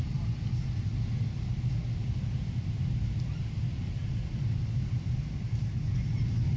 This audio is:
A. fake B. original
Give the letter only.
B